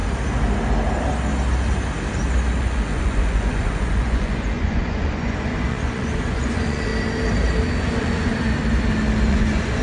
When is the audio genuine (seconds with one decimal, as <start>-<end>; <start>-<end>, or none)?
0.0-2.6; 6.9-7.8; 8.3-9.3